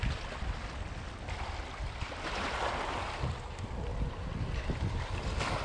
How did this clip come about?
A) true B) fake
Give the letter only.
A